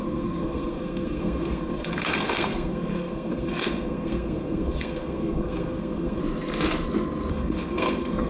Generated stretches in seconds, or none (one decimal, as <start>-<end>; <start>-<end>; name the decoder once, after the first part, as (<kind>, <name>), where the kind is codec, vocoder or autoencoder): 0.0-6.2 (codec, SNAC); 7.3-8.3